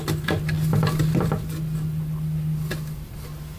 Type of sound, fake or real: real